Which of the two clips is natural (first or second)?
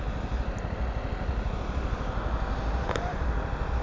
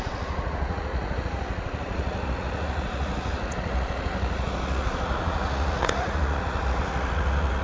first